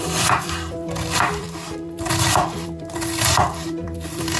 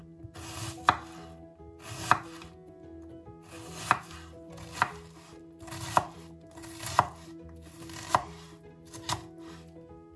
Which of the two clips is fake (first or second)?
first